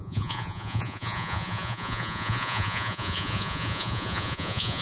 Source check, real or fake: fake